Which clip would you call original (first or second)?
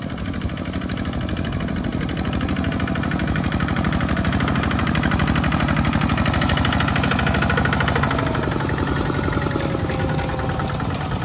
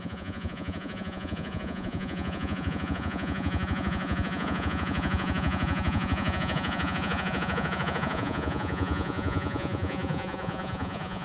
first